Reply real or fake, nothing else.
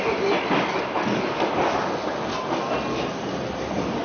real